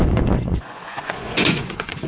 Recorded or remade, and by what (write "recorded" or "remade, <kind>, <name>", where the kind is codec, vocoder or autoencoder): remade, vocoder, Vocos